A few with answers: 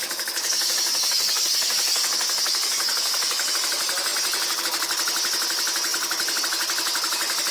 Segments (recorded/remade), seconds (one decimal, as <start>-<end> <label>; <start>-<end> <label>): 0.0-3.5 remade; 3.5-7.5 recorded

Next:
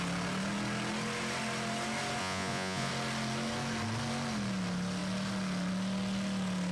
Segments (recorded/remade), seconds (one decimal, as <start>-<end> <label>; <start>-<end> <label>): 0.0-2.2 recorded; 2.2-2.9 remade; 2.9-6.7 recorded

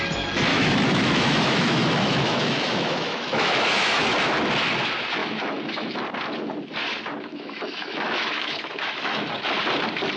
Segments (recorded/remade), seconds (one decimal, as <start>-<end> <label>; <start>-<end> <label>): 0.0-0.5 recorded; 0.5-4.0 remade; 4.0-5.2 recorded; 5.2-6.0 remade; 6.0-7.3 recorded; 7.3-9.3 remade; 9.3-10.2 recorded

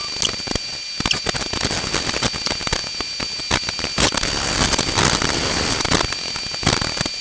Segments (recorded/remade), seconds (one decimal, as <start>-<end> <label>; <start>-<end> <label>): 0.0-7.2 recorded

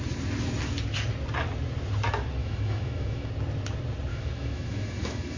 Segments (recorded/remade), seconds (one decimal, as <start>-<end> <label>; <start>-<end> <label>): 0.0-2.4 recorded; 2.4-3.3 remade; 3.3-4.1 recorded; 4.1-5.4 remade